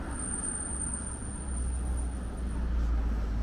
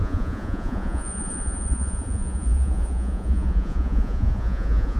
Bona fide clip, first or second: first